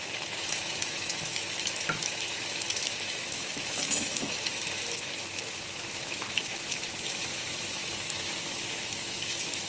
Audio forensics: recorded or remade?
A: remade